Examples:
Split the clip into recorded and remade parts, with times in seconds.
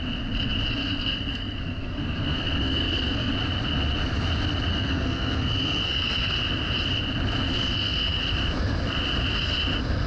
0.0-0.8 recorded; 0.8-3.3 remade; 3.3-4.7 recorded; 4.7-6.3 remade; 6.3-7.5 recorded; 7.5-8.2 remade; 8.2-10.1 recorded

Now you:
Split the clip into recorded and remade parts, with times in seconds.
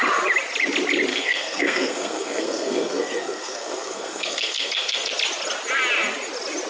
0.0-1.1 recorded; 1.1-5.1 remade; 5.1-6.7 recorded